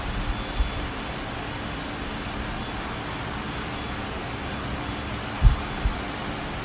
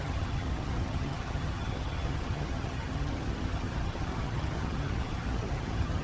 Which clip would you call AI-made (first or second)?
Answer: second